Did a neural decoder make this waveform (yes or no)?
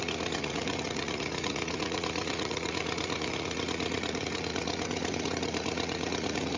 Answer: yes